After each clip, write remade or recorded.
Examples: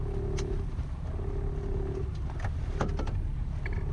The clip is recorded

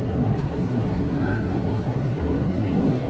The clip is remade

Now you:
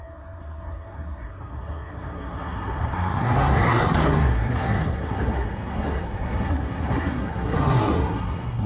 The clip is remade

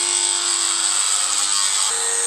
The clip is recorded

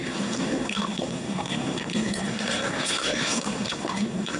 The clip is remade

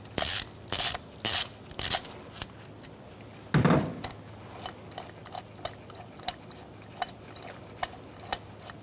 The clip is recorded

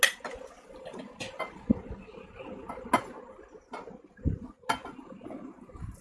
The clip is recorded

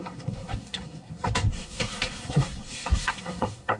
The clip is remade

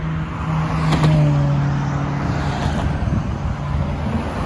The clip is recorded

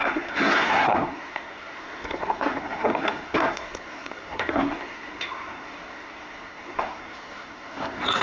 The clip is remade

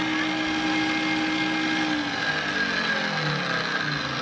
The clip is recorded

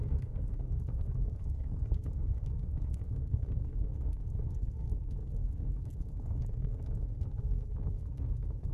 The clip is remade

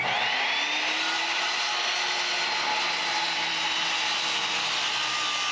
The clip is recorded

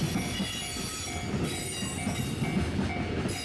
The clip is recorded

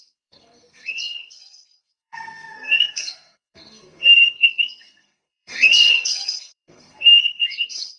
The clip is remade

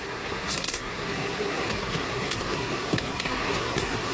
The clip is remade